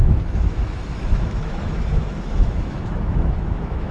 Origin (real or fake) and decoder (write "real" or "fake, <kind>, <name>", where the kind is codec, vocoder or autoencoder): fake, autoencoder, DAC-VAE